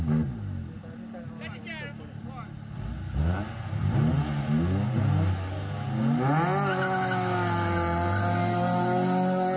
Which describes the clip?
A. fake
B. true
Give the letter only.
B